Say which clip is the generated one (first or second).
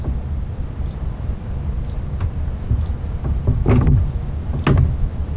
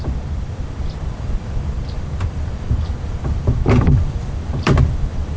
second